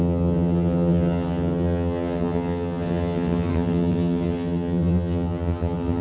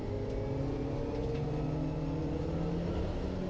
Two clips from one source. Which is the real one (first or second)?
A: second